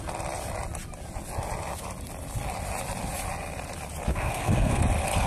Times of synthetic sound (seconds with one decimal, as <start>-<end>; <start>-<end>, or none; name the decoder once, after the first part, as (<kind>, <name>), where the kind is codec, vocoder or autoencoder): 4.1-4.8 (codec, SNAC)